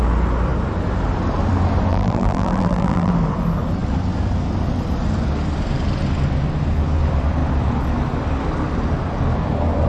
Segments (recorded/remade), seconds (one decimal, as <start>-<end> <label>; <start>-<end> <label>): 0.0-1.9 recorded; 1.9-3.1 remade; 3.1-9.9 recorded

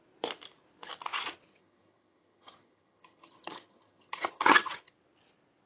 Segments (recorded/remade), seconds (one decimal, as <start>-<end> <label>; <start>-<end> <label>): 0.0-1.5 recorded; 1.5-4.9 remade; 4.9-5.7 recorded

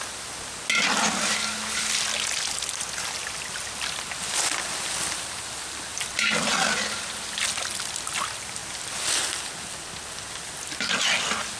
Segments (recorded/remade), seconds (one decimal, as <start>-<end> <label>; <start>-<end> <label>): 0.0-11.6 recorded

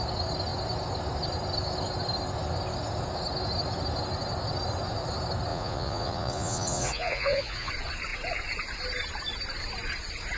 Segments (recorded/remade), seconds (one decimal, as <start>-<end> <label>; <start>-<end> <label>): 0.0-5.5 recorded; 5.5-7.7 remade; 7.7-10.4 recorded

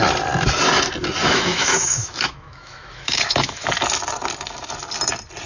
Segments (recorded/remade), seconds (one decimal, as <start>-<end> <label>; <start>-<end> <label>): 0.0-1.2 recorded; 1.2-3.7 remade; 3.7-5.5 recorded